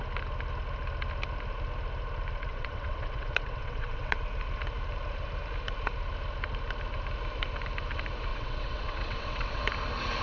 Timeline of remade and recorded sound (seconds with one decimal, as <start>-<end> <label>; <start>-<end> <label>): 0.0-2.5 recorded; 2.5-4.2 remade; 4.2-8.3 recorded; 8.3-9.6 remade; 9.6-10.2 recorded